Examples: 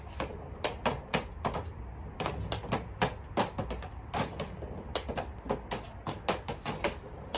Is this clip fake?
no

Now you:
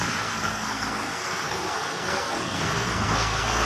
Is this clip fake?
yes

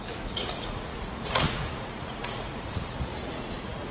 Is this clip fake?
yes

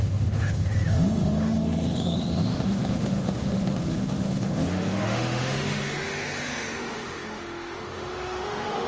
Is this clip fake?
yes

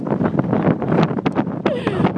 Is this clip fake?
no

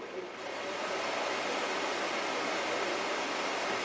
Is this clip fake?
no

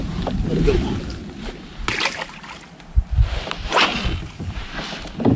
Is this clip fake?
no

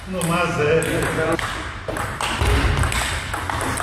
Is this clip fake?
no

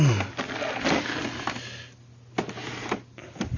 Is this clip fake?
no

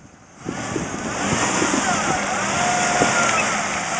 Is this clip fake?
no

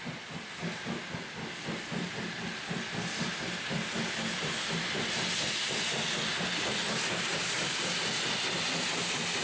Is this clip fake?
no